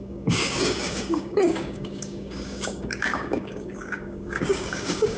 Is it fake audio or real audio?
fake